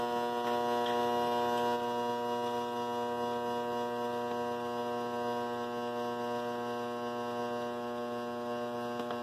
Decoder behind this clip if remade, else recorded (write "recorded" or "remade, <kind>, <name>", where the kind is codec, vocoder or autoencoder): recorded